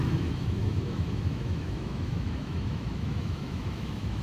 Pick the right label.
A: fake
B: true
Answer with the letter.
A